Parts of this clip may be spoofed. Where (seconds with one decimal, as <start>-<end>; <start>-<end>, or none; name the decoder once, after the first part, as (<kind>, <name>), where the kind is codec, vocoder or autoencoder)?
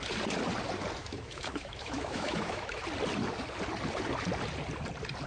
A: 1.0-2.8 (autoencoder, DAC-VAE)